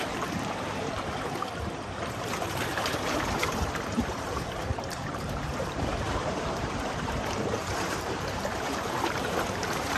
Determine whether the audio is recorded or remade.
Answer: remade